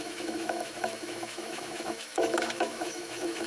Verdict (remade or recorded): remade